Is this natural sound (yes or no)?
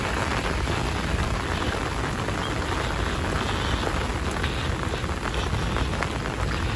yes